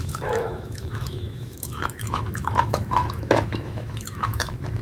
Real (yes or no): no